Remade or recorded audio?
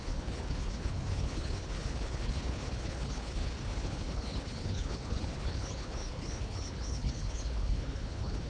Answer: remade